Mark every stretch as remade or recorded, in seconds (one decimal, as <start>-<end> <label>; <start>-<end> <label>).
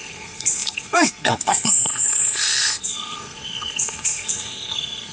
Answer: 0.0-5.1 remade